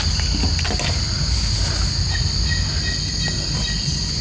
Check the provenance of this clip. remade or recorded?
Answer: recorded